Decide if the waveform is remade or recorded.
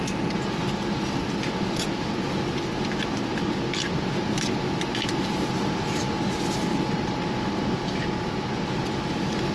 recorded